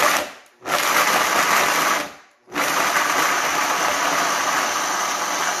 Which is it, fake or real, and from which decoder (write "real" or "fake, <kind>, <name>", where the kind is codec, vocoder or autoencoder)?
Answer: real